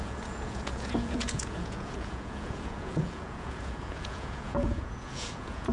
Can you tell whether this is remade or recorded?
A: remade